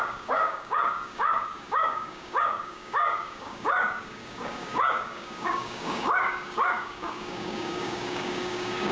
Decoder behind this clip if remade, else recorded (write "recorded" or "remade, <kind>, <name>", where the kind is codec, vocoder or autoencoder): remade, codec, DAC